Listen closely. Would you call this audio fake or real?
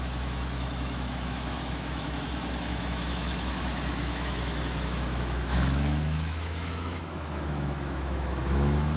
fake